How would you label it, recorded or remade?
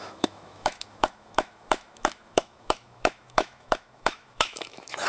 remade